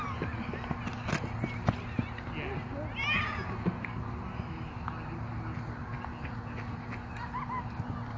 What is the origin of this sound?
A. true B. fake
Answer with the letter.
A